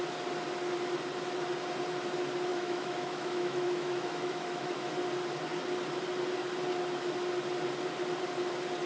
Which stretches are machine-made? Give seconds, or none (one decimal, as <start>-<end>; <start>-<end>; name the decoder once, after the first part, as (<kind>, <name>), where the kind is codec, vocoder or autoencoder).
2.5-4.9 (autoencoder, DAC-VAE)